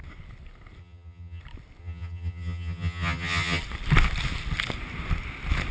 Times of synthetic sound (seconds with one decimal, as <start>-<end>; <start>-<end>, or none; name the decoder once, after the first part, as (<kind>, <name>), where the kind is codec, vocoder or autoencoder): 0.8-1.4 (vocoder, HiFi-GAN); 1.8-3.6